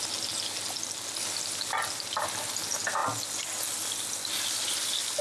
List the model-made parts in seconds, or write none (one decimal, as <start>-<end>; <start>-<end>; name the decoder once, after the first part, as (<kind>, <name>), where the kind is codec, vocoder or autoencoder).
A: none